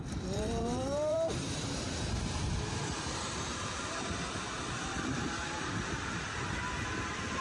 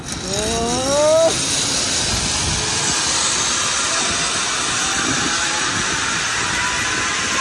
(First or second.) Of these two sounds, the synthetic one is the first